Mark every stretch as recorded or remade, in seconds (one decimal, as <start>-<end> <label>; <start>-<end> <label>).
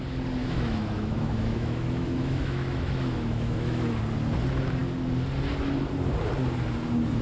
0.0-0.4 recorded; 0.4-4.0 remade; 4.0-7.2 recorded